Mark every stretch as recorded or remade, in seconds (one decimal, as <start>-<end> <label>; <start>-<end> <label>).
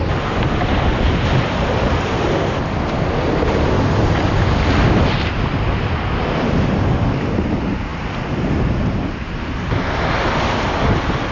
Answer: 0.0-11.3 recorded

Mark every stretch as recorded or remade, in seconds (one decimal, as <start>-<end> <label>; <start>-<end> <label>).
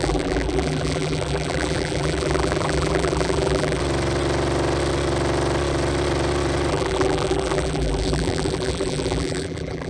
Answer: 0.0-3.8 remade; 3.8-6.7 recorded; 6.7-9.9 remade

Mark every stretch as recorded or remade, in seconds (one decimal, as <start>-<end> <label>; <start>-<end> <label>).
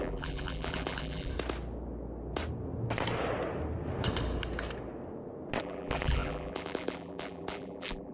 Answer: 0.0-1.3 remade; 1.3-5.6 recorded; 5.6-8.1 remade